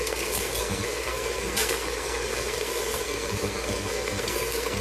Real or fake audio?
fake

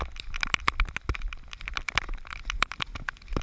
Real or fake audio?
real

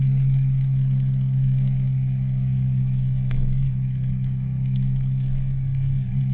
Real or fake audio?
fake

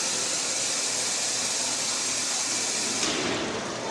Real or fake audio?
real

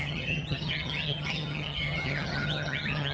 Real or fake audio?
fake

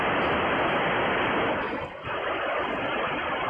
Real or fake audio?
real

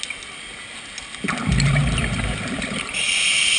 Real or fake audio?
real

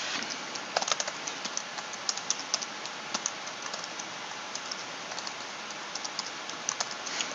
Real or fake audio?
real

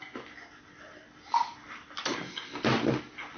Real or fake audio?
real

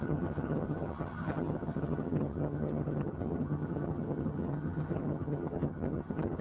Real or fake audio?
fake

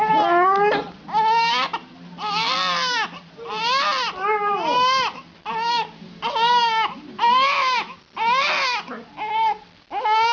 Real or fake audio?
real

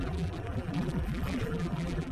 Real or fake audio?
fake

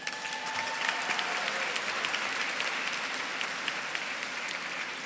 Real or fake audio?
real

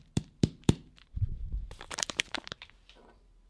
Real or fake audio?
fake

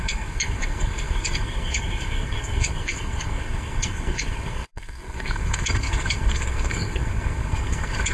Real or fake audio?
fake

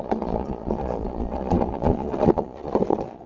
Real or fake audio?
fake